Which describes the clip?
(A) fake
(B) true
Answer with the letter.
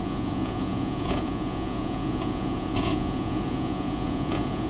A